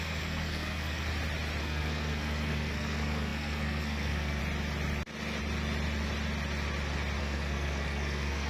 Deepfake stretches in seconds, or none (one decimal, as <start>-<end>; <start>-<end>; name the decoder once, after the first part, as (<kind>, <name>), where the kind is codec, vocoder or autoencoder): 0.0-1.1 (codec, SNAC); 1.6-4.4; 7.2-8.5